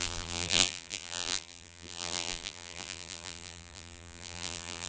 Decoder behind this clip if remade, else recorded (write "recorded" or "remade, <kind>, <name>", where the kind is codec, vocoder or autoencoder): remade, vocoder, BigVGAN v2